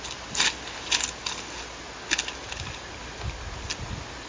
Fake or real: real